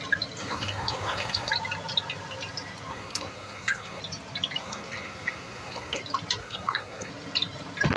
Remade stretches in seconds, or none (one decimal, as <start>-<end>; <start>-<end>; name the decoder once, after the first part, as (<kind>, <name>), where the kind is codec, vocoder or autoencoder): 0.4-1.5 (codec, SNAC); 2.9-4.0; 4.6-6.0; 6.4-7.1